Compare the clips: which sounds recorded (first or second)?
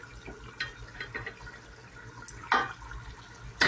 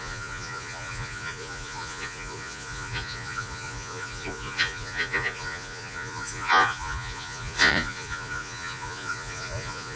first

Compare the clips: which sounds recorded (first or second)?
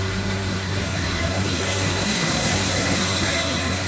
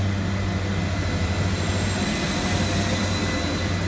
second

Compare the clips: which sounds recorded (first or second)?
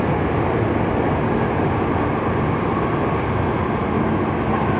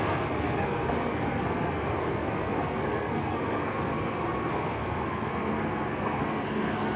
first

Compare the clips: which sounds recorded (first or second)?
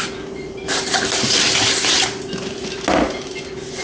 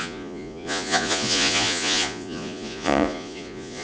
first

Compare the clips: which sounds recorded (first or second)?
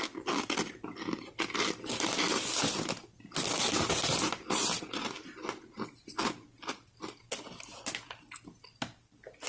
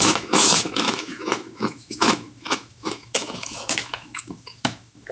first